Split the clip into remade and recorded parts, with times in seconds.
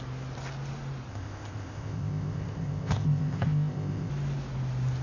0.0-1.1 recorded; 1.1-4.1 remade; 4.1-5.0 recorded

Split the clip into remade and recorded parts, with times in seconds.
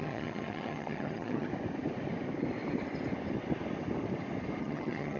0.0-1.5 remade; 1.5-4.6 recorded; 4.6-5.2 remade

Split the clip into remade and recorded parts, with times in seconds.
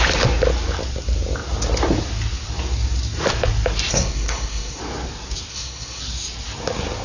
0.0-3.9 recorded; 3.9-4.8 remade; 4.8-5.5 recorded; 5.5-6.0 remade; 6.0-7.0 recorded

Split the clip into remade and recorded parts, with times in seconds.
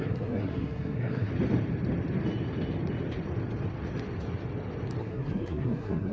0.0-1.3 remade; 1.3-5.0 recorded; 5.0-6.1 remade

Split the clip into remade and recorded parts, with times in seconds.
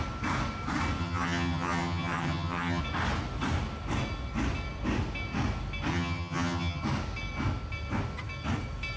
0.0-1.0 recorded; 1.0-2.8 remade; 2.8-5.9 recorded; 5.9-6.8 remade; 6.8-9.0 recorded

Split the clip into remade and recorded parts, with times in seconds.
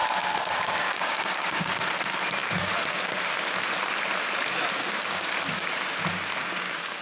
0.0-1.8 remade; 1.8-2.4 recorded; 2.4-3.2 remade; 3.2-4.8 recorded; 4.8-5.3 remade; 5.3-6.4 recorded; 6.4-7.0 remade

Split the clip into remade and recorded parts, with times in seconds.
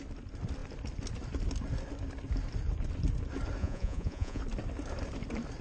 0.0-3.6 recorded; 3.6-4.4 remade; 4.4-5.6 recorded